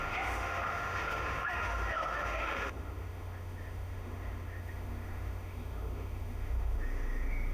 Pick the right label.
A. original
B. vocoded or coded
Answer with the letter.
B